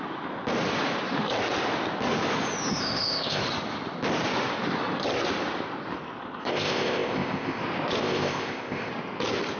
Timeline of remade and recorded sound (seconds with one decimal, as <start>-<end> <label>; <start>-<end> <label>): 0.0-2.7 recorded; 2.7-3.4 remade; 3.4-6.4 recorded; 6.4-7.6 remade; 7.6-8.0 recorded; 8.0-8.9 remade; 8.9-9.6 recorded